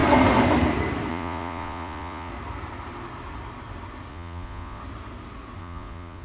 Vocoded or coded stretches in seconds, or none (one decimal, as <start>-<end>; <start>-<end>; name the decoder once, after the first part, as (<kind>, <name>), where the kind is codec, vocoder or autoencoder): 1.1-2.3 (vocoder, Vocos); 4.1-4.8; 5.6-6.2